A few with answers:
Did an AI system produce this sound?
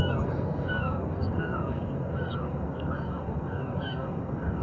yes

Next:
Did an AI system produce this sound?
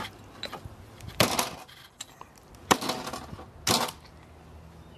no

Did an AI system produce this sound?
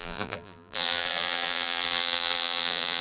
yes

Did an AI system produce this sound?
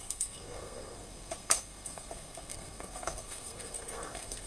yes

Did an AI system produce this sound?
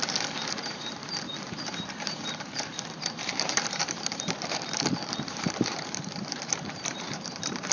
yes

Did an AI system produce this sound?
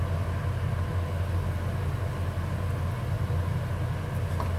no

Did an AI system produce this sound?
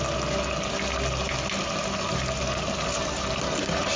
no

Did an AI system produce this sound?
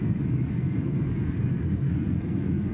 yes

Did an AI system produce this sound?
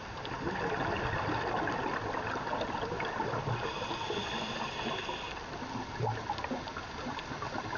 no